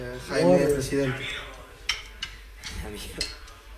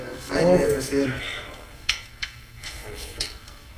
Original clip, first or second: first